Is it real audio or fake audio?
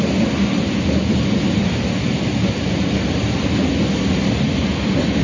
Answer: real